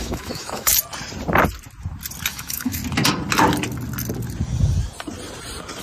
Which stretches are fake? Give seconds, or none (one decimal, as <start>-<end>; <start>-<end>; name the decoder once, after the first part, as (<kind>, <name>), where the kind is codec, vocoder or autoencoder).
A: 0.0-0.7 (autoencoder, DAC-VAE); 2.3-2.8